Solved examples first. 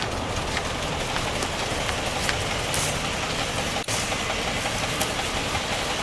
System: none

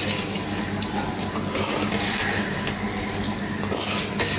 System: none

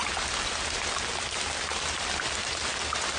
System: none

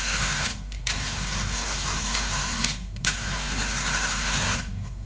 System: codec, SNAC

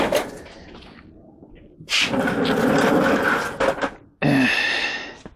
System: none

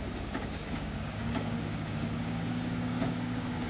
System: codec, DAC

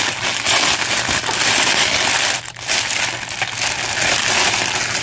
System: none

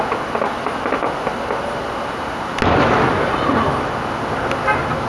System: none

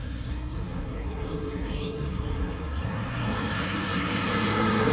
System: codec, SNAC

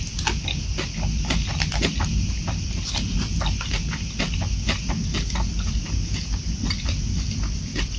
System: none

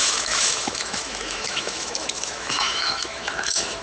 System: autoencoder, DAC-VAE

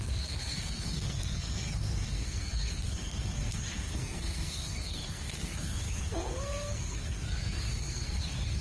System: codec, SNAC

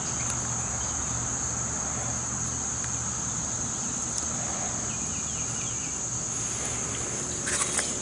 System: none